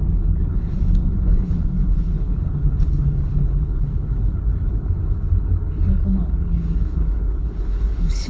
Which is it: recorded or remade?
remade